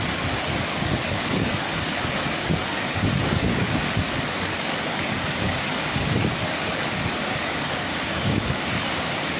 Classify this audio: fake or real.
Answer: fake